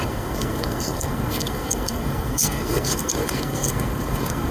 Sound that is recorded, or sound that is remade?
remade